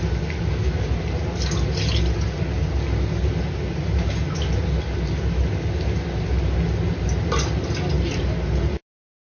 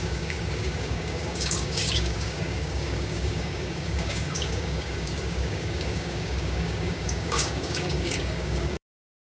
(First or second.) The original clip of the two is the first